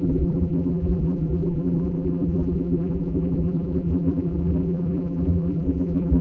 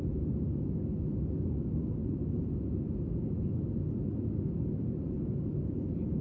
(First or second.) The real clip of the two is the second